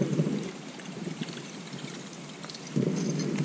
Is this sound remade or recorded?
recorded